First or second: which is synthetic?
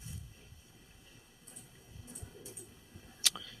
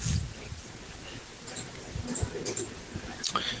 first